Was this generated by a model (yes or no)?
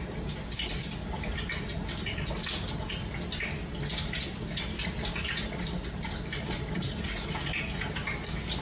no